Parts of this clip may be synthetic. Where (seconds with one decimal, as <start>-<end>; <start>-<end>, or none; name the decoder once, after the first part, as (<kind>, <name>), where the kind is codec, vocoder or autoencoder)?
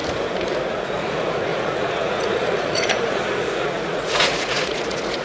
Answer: 0.7-5.2 (vocoder, Vocos)